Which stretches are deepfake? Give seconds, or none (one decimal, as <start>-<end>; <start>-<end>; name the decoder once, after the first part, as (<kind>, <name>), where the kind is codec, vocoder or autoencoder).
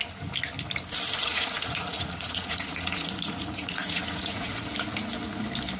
1.2-4.7 (vocoder, Vocos)